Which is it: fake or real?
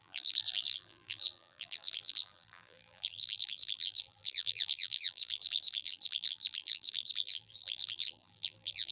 fake